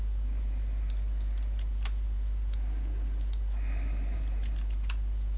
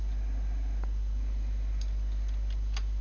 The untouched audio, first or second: second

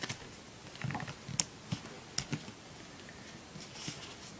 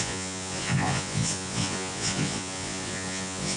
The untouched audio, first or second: first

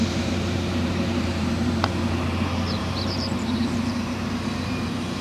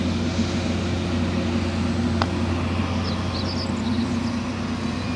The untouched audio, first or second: second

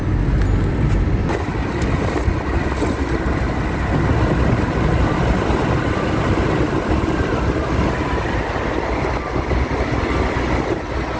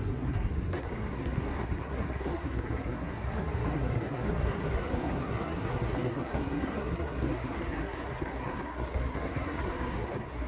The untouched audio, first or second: first